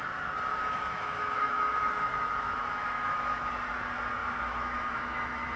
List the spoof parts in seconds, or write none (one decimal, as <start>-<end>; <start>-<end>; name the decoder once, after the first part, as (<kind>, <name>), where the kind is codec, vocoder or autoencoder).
0.5-3.5 (autoencoder, DAC-VAE); 4.2-5.6